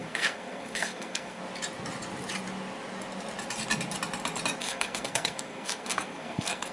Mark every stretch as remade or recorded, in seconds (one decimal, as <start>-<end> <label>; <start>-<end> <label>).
0.0-1.4 remade; 1.4-4.6 recorded; 4.6-6.7 remade